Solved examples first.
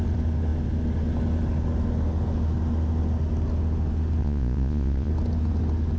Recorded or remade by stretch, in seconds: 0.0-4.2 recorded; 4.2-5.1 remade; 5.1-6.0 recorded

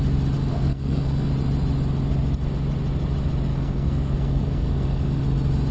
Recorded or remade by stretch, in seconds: 0.0-0.5 recorded; 0.5-1.3 remade; 1.3-3.5 recorded; 3.5-5.2 remade; 5.2-5.7 recorded

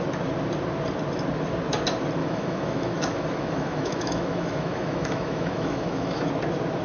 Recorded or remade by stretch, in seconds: 0.0-2.2 recorded; 2.2-6.3 remade; 6.3-6.8 recorded

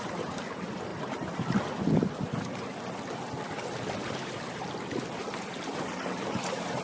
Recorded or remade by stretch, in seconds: 0.0-6.8 recorded

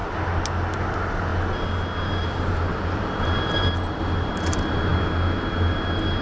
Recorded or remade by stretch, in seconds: 0.0-0.9 recorded; 0.9-1.3 remade; 1.3-2.0 recorded; 2.0-6.2 remade